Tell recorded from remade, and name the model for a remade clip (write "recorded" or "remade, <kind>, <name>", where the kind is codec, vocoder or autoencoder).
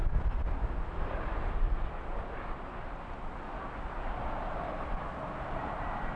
recorded